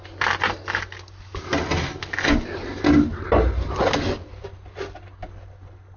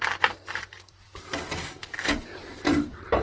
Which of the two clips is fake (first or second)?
second